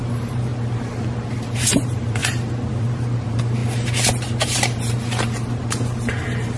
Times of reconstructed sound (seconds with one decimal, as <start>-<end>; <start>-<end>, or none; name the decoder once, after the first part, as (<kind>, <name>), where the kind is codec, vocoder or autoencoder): 0.0-0.5 (vocoder, BigVGAN v2); 1.4-2.2; 2.7-6.6